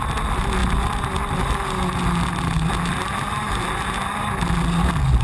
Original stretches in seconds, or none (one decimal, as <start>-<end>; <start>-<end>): 0.0-5.2